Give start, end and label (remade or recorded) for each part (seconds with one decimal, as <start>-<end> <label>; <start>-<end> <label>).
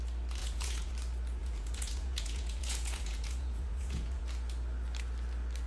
0.0-0.4 recorded; 0.4-0.9 remade; 0.9-1.4 recorded; 1.4-4.2 remade; 4.2-5.7 recorded